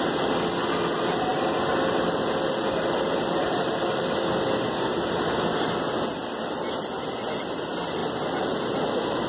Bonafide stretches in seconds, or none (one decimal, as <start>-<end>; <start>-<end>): 0.0-9.3